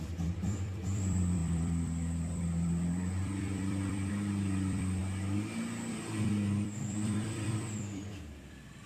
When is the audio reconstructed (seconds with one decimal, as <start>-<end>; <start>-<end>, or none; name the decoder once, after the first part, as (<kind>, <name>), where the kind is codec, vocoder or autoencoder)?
0.0-5.0 (vocoder, BigVGAN v2); 5.9-8.9